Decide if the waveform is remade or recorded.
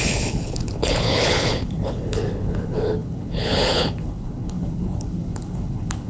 remade